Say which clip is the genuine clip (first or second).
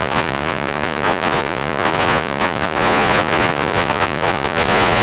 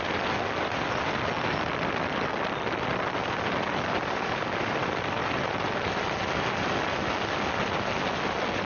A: second